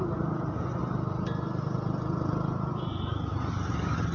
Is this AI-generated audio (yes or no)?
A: no